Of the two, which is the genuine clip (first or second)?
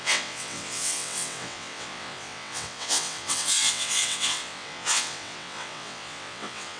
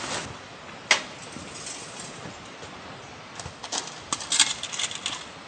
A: second